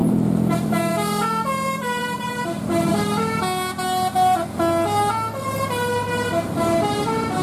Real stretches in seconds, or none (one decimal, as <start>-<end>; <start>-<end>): 0.9-2.0; 2.9-7.4